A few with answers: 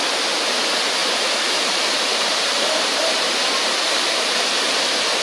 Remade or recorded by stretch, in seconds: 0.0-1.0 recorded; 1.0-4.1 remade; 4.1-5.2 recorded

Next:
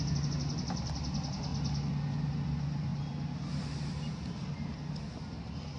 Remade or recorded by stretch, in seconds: 0.0-5.8 recorded